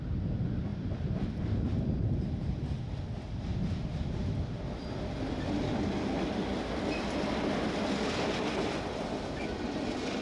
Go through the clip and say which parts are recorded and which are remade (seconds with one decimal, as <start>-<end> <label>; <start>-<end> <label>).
0.0-0.7 recorded; 0.7-2.3 remade; 2.3-10.2 recorded